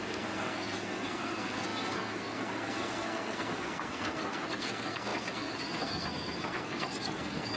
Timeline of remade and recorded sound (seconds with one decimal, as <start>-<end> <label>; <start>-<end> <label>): 0.0-7.6 remade